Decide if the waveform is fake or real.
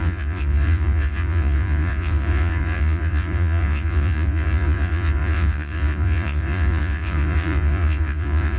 fake